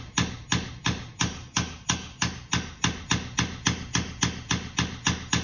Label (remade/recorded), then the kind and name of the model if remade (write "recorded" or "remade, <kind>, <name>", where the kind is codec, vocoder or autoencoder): recorded